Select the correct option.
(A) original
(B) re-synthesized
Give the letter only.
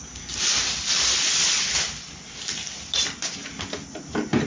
A